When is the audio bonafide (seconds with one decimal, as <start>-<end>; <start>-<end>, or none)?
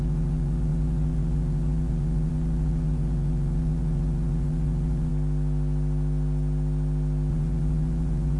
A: 5.1-7.3